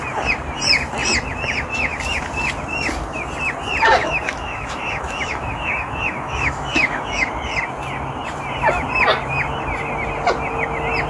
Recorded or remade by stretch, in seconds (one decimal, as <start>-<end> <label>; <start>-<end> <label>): 0.0-4.0 recorded; 4.0-7.3 remade; 7.3-11.1 recorded

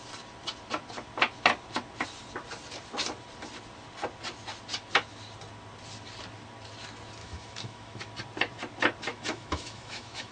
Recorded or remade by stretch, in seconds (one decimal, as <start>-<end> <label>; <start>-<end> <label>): 0.0-7.2 recorded; 7.2-8.1 remade; 8.1-9.1 recorded; 9.1-10.3 remade

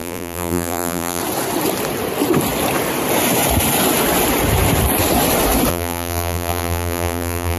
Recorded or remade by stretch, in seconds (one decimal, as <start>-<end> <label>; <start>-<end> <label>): 0.0-1.2 remade; 1.2-5.7 recorded; 5.7-7.6 remade

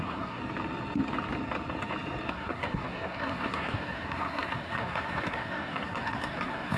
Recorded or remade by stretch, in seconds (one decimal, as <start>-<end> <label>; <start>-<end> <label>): 0.0-0.4 remade; 0.4-2.3 recorded; 2.3-6.8 remade

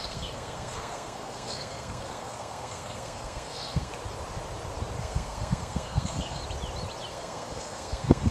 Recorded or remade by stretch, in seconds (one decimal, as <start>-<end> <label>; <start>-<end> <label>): 0.0-3.9 remade; 3.9-5.0 recorded; 5.0-6.4 remade; 6.4-7.1 recorded; 7.1-8.3 remade

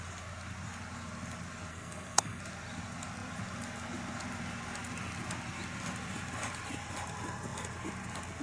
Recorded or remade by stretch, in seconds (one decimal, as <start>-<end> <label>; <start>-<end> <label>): 0.0-1.7 recorded; 1.7-2.4 remade; 2.4-8.4 recorded

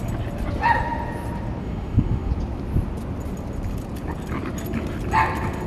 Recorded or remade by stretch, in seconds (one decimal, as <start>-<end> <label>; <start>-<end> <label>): 0.0-1.6 recorded; 1.6-2.3 remade; 2.3-5.7 recorded

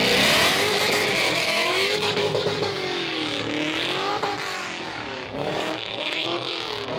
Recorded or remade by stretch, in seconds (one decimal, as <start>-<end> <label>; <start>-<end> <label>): 0.0-0.5 recorded; 0.5-4.1 remade; 4.1-4.6 recorded; 4.6-7.0 remade